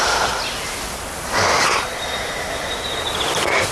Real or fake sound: real